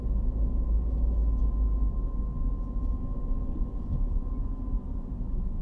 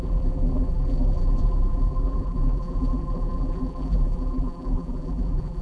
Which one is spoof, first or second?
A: second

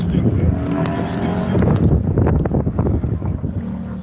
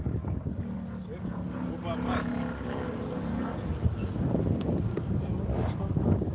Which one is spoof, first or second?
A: first